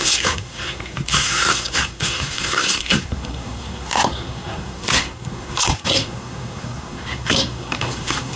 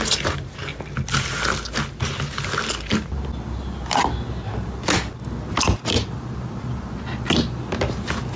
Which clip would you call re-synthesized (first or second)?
first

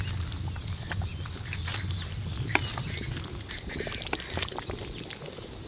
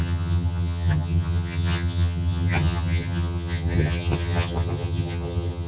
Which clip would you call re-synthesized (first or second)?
second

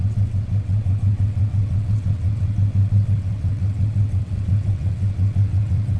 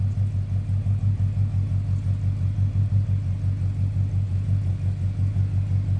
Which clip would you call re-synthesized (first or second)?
first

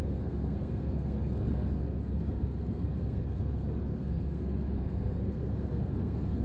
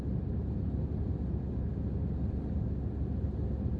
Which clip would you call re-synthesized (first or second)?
first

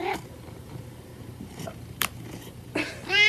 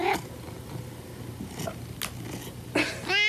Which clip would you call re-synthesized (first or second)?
first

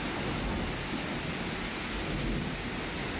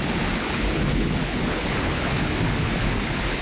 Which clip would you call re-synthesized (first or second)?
second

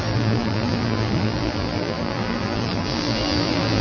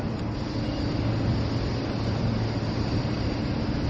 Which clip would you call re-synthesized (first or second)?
first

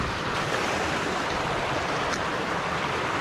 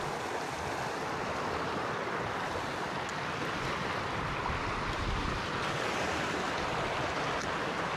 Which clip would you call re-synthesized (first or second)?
first